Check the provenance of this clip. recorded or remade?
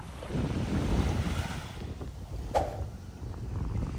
recorded